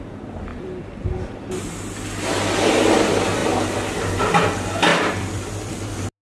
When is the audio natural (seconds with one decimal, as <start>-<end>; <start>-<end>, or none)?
0.0-0.5; 1.5-4.9; 5.7-6.2